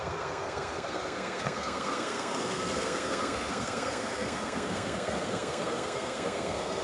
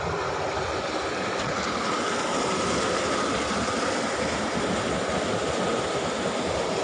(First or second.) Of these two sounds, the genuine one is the second